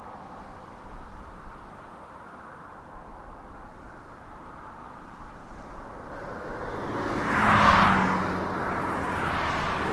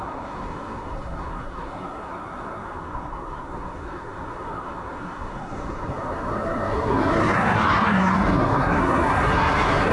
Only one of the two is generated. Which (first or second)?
second